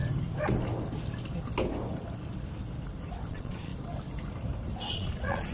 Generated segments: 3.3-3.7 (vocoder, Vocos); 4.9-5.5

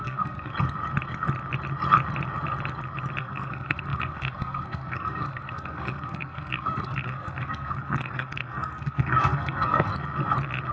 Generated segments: 0.0-0.5 (codec, SNAC); 3.2-9.9

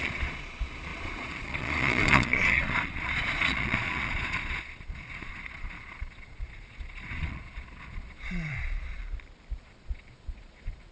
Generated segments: 0.0-9.0 (vocoder, Vocos); 9.6-10.9

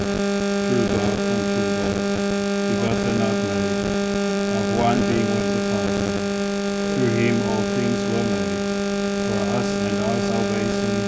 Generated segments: 4.3-5.0 (vocoder, BigVGAN v2)